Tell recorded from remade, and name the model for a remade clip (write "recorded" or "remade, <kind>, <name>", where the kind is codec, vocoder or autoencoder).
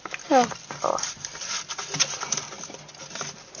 recorded